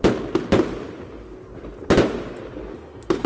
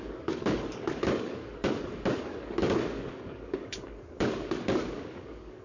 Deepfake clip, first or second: second